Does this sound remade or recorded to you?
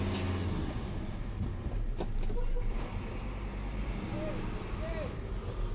recorded